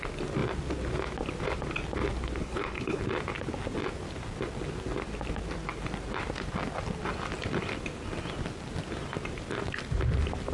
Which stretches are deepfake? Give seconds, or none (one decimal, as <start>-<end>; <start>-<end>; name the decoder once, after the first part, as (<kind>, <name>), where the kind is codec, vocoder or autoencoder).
2.4-3.0 (codec, HILCodec)